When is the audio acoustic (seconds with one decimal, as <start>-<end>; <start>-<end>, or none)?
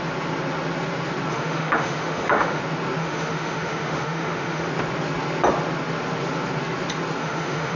0.0-1.3; 2.6-3.0; 4.7-7.2